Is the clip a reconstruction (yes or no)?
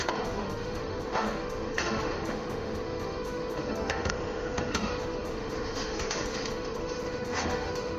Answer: yes